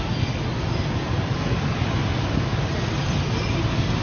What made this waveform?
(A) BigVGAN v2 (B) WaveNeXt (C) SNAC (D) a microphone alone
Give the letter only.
D